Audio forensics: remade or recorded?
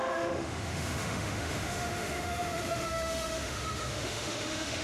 remade